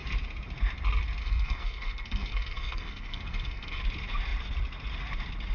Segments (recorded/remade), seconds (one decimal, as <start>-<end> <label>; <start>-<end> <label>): 0.0-1.2 recorded; 1.2-3.8 remade; 3.8-5.5 recorded